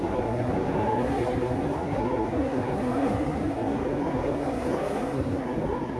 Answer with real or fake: fake